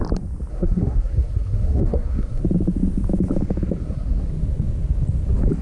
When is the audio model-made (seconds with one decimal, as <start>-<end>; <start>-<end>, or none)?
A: 0.5-2.4; 3.8-4.3